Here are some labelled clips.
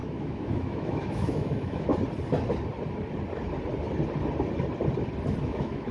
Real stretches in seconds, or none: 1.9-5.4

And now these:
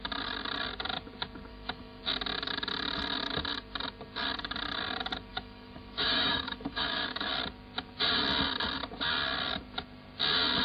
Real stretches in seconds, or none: 0.0-1.5; 2.0-5.3; 7.3-10.6

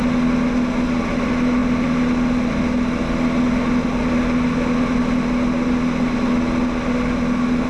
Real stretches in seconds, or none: 0.0-7.7

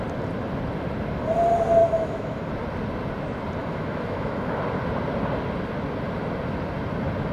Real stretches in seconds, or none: 0.0-1.8; 2.5-3.6; 4.6-7.3

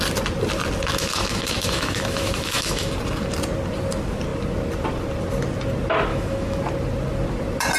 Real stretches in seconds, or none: 0.0-0.9; 2.9-6.1; 6.6-7.8